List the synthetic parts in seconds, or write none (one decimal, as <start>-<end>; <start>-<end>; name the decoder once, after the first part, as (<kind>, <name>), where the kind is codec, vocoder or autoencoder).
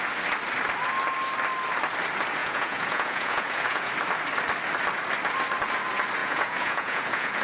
2.4-3.9 (vocoder, Vocos); 6.2-7.4